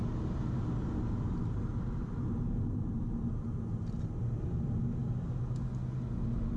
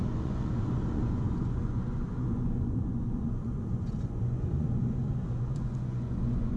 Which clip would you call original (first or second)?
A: first